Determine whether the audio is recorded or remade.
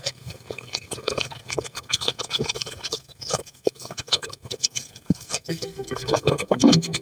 remade